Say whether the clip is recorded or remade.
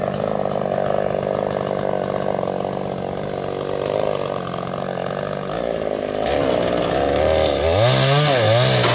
recorded